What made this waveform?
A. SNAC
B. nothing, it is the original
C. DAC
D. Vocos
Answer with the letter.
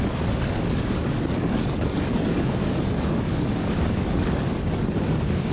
C